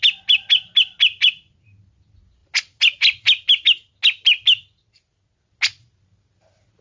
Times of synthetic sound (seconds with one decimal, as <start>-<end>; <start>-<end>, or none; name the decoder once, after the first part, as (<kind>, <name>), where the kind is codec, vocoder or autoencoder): none